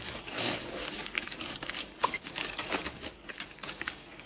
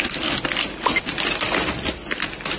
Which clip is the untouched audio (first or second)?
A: second